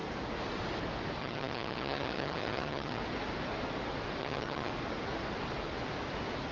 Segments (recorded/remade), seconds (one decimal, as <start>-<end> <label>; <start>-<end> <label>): 0.0-1.2 recorded; 1.2-3.0 remade; 3.0-4.2 recorded; 4.2-4.7 remade; 4.7-6.5 recorded